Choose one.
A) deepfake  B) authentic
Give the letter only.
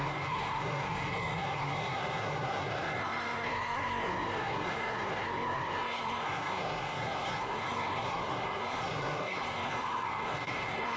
A